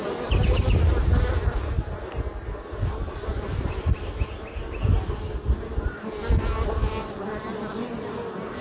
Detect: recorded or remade recorded